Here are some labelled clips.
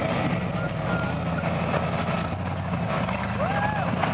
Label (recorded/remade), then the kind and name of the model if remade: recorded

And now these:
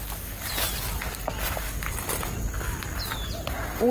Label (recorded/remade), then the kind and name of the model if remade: recorded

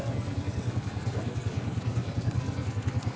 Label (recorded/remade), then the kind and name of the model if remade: remade, codec, SNAC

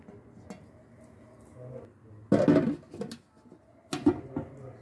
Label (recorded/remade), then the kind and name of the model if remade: recorded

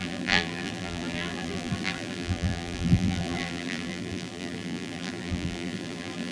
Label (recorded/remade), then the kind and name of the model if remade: remade, vocoder, BigVGAN v2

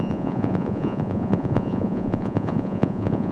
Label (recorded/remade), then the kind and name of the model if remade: remade, vocoder, Vocos